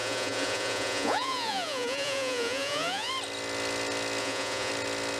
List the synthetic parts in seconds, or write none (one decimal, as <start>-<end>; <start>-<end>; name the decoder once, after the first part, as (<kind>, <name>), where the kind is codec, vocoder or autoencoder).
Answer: 0.0-3.1 (vocoder, Vocos); 4.2-4.7